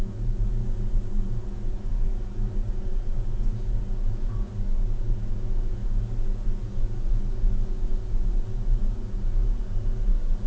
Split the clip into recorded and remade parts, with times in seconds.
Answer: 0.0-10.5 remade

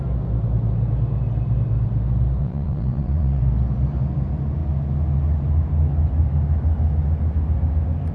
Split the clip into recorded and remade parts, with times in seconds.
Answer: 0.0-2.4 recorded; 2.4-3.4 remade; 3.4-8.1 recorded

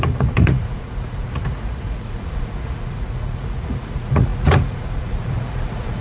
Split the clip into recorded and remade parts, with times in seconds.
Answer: 0.0-6.0 remade

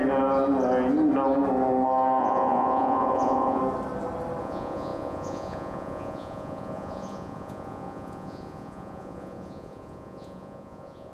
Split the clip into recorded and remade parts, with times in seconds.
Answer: 0.0-2.2 recorded; 2.2-3.6 remade; 3.6-4.4 recorded; 4.4-11.1 remade

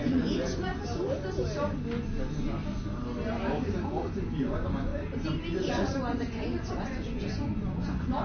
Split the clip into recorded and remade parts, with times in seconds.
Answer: 0.0-0.7 remade; 0.7-4.2 recorded; 4.2-4.9 remade; 4.9-5.7 recorded; 5.7-8.2 remade